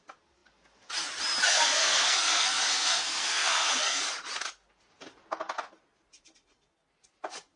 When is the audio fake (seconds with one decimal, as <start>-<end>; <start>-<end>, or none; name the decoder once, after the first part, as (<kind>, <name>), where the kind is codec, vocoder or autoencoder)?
1.5-4.0 (codec, SNAC)